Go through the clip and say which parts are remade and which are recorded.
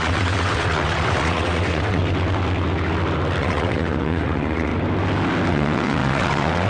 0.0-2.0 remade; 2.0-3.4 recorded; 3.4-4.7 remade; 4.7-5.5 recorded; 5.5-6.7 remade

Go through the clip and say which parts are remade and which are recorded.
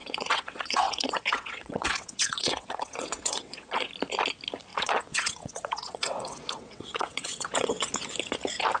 0.0-3.9 remade; 3.9-4.7 recorded; 4.7-7.9 remade; 7.9-8.8 recorded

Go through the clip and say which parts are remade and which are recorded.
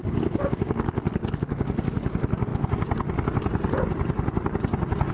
0.0-5.1 recorded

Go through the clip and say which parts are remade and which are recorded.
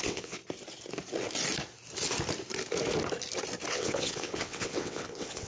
0.0-0.4 remade; 0.4-3.7 recorded; 3.7-5.5 remade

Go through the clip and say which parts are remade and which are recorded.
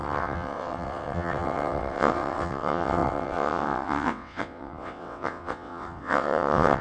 0.0-6.8 remade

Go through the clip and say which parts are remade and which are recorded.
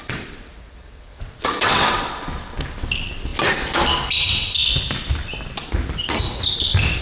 0.0-2.1 remade; 2.1-7.0 recorded